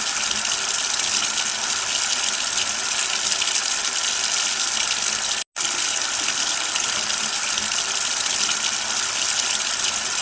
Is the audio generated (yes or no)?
no